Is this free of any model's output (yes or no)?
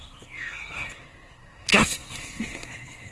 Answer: no